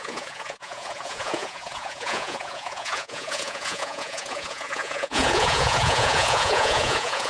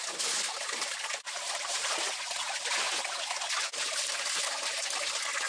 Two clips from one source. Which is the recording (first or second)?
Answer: second